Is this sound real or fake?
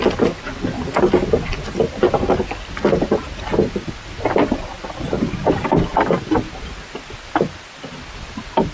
real